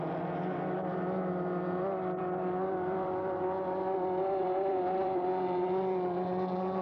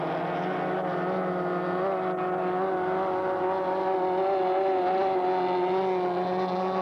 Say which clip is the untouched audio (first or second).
second